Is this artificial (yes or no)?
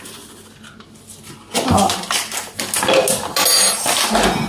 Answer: no